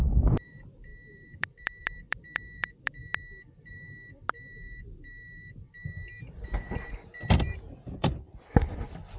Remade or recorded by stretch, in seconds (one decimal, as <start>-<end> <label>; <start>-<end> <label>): 0.0-3.0 remade; 3.0-3.7 recorded; 3.7-9.2 remade